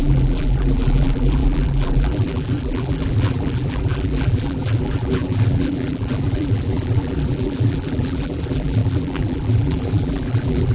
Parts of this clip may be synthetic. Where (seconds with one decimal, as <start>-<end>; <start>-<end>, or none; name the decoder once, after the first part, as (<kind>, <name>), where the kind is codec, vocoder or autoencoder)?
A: 0.0-10.7 (vocoder, BigVGAN v2)